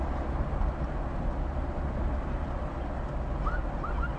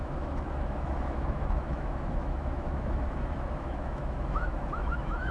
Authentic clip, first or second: first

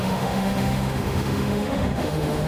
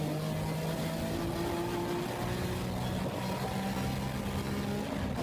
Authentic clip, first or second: second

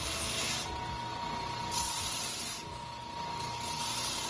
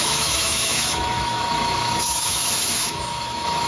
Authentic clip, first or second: first